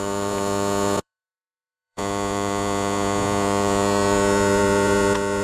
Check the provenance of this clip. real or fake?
fake